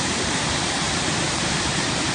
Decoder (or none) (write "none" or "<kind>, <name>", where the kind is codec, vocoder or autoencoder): vocoder, BigVGAN v2